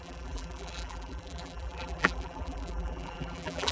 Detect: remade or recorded remade